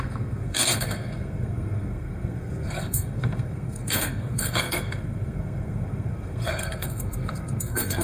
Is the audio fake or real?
fake